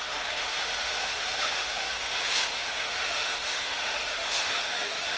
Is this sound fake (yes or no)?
yes